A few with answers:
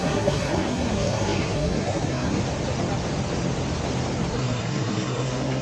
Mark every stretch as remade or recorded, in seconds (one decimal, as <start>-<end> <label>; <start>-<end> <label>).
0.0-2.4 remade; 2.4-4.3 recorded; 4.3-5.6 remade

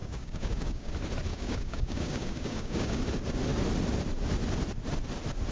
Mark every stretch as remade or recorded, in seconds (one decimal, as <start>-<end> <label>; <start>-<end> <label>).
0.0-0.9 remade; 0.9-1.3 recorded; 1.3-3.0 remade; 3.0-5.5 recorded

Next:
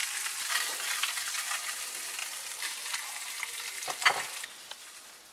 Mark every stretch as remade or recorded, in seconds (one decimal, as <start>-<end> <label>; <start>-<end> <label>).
0.0-2.2 recorded; 2.2-4.1 remade; 4.1-5.3 recorded

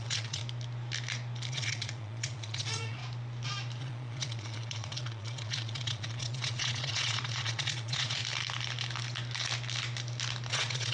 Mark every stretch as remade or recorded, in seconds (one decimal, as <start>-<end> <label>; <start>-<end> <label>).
0.0-0.4 remade; 0.4-1.5 recorded; 1.5-3.0 remade; 3.0-3.8 recorded; 3.8-8.2 remade; 8.2-10.5 recorded; 10.5-10.9 remade

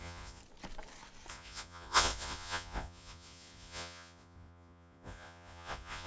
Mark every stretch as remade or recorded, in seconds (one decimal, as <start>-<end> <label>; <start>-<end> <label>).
0.0-0.4 remade; 0.4-1.3 recorded; 1.3-6.1 remade

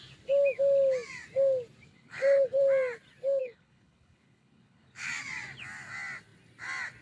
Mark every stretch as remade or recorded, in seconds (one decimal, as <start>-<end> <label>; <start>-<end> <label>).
0.0-1.9 recorded; 1.9-2.6 remade; 2.6-3.4 recorded; 3.4-5.1 remade; 5.1-7.0 recorded

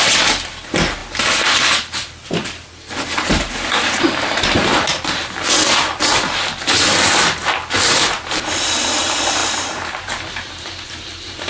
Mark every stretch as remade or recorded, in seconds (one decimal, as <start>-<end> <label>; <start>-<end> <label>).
0.0-9.4 recorded; 9.4-11.5 remade